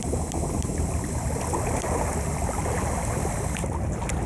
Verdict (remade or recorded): recorded